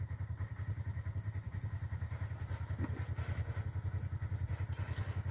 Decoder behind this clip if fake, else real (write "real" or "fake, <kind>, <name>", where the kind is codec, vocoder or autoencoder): real